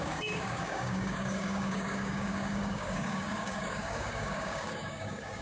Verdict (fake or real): fake